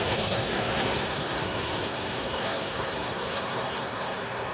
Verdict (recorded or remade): remade